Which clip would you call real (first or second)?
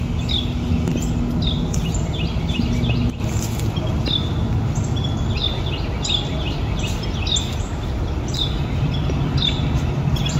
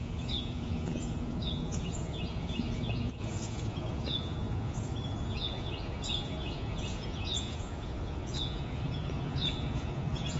first